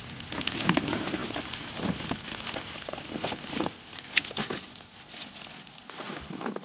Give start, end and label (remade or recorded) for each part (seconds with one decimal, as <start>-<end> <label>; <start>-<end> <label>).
0.0-5.8 recorded; 5.8-6.6 remade

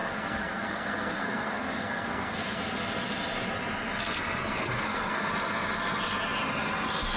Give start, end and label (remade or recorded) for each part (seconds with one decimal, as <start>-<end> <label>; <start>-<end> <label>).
0.0-2.6 remade; 2.6-4.4 recorded; 4.4-5.3 remade; 5.3-7.2 recorded